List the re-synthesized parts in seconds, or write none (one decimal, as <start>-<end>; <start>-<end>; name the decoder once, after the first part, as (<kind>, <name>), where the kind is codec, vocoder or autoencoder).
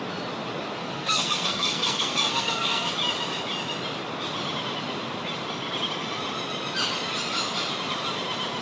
0.8-2.9 (codec, SNAC)